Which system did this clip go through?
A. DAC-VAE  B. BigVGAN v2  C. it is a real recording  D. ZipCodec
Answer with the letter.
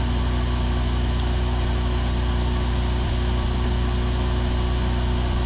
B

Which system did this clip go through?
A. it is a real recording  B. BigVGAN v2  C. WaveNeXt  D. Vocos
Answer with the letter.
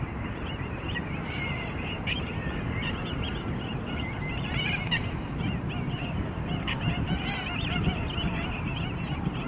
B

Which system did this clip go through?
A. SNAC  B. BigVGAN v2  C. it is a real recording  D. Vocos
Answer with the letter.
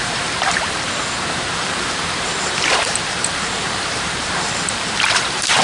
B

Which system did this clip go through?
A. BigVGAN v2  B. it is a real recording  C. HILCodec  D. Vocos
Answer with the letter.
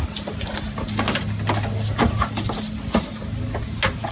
B